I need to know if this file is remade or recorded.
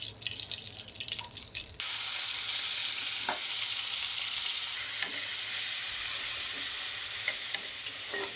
recorded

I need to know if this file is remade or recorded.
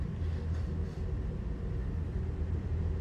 recorded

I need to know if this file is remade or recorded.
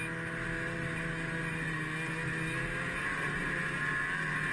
recorded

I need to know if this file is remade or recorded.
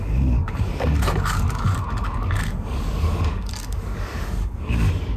remade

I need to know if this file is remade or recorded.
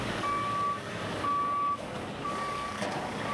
remade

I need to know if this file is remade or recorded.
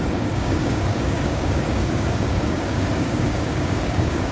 remade